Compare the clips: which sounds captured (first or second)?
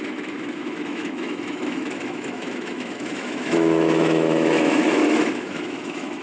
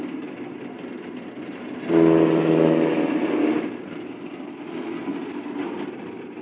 second